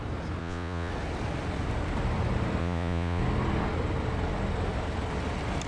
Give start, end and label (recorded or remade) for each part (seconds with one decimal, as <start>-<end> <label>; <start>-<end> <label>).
0.0-0.4 recorded; 0.4-0.9 remade; 0.9-2.6 recorded; 2.6-3.2 remade; 3.2-5.7 recorded